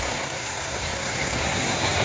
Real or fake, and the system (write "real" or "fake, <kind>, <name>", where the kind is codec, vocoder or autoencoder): fake, codec, SNAC